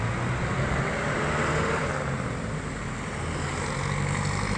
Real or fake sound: real